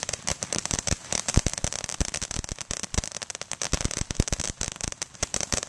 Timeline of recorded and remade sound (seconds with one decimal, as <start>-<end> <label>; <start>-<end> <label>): 0.0-1.5 remade; 1.5-4.4 recorded; 4.4-5.7 remade